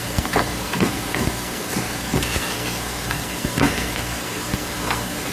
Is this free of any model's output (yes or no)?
no